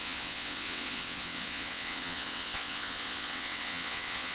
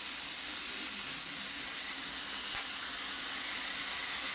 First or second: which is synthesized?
first